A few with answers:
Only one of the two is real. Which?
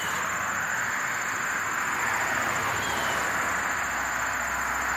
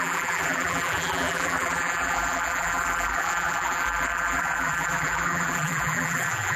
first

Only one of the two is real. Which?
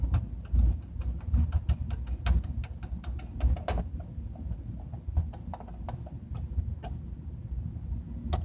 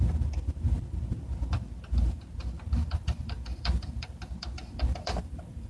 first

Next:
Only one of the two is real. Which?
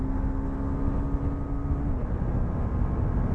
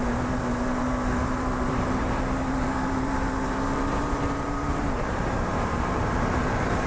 first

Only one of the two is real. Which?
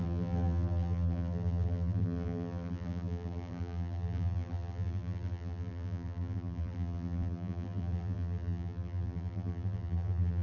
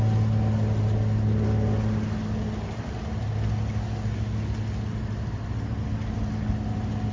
second